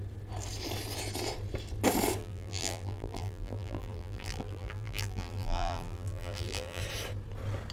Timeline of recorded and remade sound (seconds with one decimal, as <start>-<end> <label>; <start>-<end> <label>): 0.0-2.2 recorded; 2.2-6.8 remade; 6.8-7.7 recorded